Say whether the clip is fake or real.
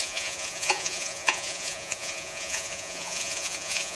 fake